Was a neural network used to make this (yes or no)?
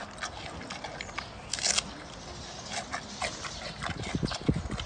no